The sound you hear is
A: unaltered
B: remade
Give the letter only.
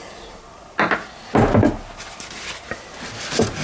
A